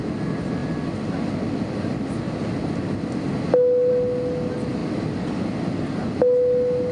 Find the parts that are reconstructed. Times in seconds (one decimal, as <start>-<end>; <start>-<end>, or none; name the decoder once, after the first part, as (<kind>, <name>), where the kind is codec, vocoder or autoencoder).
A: none